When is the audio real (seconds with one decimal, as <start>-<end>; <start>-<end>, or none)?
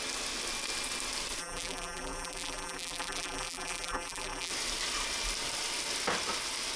0.0-1.4; 4.5-6.8